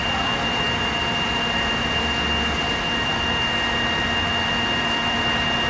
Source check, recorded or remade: recorded